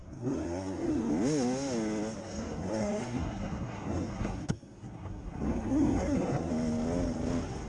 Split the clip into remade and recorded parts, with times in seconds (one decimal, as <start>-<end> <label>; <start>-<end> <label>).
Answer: 0.0-1.1 remade; 1.1-2.2 recorded; 2.2-6.5 remade; 6.5-7.7 recorded